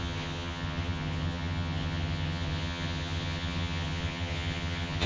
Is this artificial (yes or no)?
yes